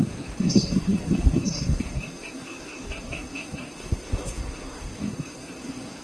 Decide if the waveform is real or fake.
fake